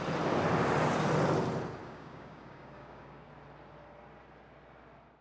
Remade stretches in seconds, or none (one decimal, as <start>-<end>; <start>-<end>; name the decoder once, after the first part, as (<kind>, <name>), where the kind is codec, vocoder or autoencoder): 1.8-3.3 (codec, DAC)